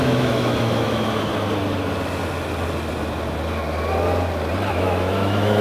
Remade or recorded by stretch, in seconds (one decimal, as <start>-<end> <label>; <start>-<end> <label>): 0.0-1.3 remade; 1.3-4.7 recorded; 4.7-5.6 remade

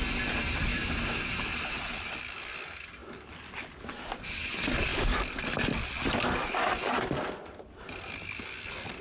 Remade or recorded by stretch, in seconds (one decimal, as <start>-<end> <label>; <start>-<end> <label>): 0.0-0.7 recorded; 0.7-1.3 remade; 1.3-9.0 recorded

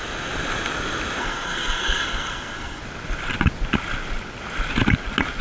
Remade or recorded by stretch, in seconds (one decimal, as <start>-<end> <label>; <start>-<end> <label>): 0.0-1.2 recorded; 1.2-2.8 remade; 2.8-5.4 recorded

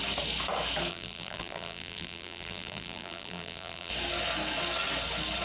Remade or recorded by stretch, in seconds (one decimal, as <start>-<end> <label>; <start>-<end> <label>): 0.0-0.9 recorded; 0.9-3.9 remade; 3.9-5.4 recorded

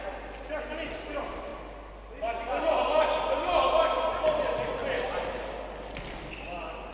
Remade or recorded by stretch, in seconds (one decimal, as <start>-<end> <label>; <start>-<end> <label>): 0.0-6.9 recorded

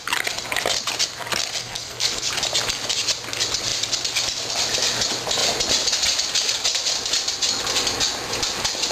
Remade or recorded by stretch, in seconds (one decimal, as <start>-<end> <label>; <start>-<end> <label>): 0.0-1.6 recorded; 1.6-2.3 remade; 2.3-8.9 recorded